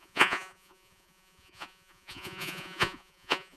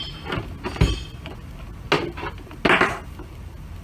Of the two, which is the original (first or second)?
second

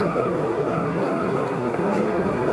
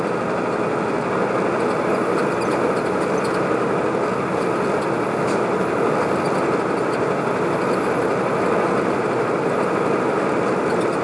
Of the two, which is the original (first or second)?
second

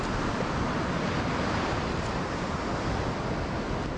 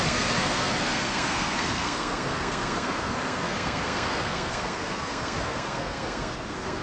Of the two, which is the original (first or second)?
first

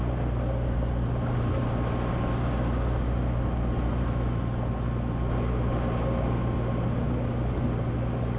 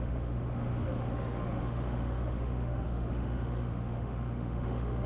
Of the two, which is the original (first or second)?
first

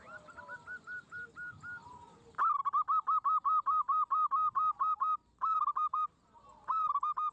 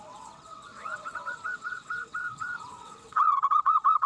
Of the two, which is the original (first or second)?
first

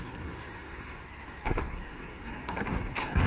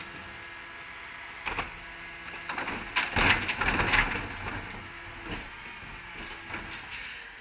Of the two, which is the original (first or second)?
second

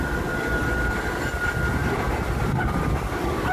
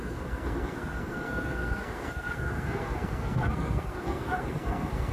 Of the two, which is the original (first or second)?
first